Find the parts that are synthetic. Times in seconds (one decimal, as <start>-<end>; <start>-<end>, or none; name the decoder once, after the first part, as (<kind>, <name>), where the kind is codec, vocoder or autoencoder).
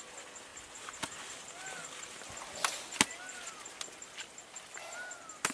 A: none